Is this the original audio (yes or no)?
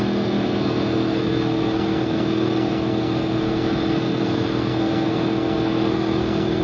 no